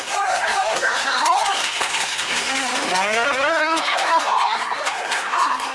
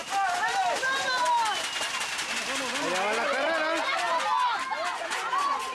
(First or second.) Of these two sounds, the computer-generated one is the first